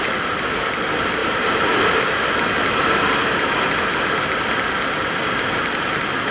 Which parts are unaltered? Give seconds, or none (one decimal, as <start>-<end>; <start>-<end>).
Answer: 1.2-2.6; 3.2-5.2